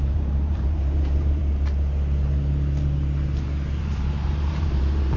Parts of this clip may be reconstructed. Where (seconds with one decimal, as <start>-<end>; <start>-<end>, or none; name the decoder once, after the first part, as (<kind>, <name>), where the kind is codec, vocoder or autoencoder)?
0.0-1.4 (vocoder, BigVGAN v2); 3.8-5.2